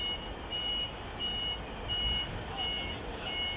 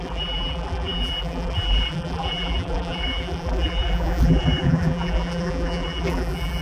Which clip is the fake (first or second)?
second